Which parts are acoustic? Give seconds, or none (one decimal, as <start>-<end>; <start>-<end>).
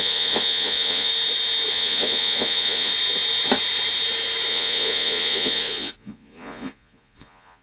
1.1-1.7; 2.9-4.5